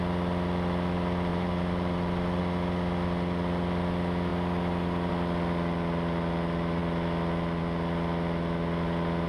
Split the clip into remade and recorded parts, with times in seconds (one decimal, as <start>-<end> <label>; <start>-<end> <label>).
0.0-1.3 recorded; 1.3-2.4 remade; 2.4-9.3 recorded